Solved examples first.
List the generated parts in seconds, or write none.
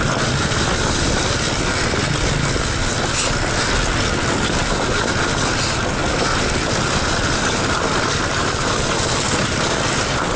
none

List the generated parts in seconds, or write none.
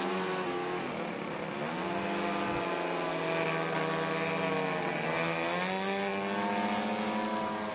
none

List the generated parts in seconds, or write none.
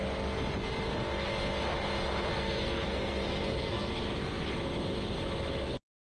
2.3-3.9 (codec, SNAC)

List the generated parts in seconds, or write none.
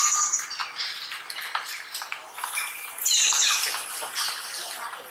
0.6-1.3 (vocoder, BigVGAN v2); 2.2-4.4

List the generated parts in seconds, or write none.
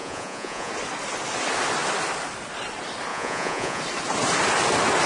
0.0-0.7 (vocoder, Vocos); 3.1-3.8